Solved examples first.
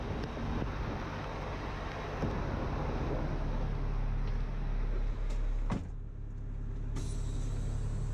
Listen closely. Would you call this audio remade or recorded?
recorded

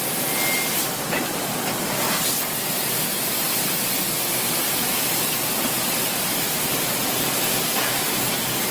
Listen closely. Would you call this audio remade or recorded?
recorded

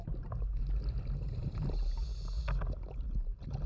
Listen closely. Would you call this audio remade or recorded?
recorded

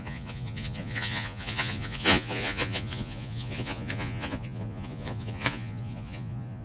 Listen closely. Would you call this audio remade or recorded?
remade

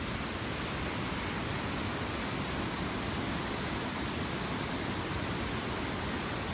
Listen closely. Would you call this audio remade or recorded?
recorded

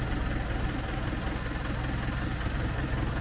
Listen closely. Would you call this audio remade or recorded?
recorded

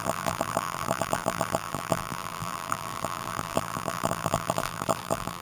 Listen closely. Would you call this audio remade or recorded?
remade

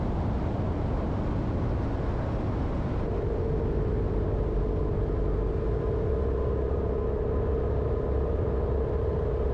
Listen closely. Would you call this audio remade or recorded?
recorded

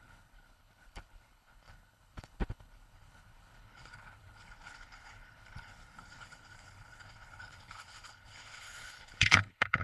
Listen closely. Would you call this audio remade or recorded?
remade